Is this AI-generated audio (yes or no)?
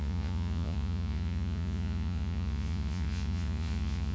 yes